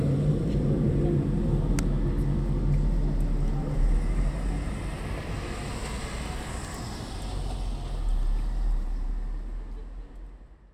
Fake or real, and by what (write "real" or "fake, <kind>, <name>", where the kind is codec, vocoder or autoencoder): real